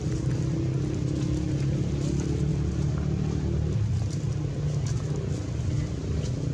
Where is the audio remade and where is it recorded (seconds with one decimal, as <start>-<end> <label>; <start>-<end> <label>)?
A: 0.0-6.5 recorded